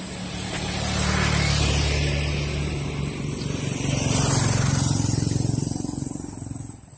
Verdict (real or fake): fake